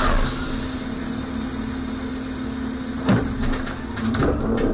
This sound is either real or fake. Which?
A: real